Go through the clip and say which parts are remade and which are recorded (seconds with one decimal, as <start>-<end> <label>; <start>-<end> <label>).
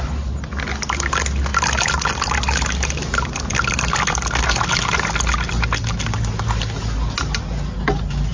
0.0-8.3 recorded